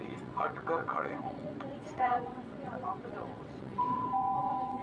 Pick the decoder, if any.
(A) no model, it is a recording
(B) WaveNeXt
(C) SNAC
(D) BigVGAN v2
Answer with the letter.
B